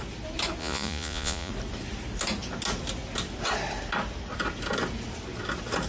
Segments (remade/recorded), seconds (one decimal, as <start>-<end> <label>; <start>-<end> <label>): 0.0-0.6 recorded; 0.6-1.5 remade; 1.5-5.9 recorded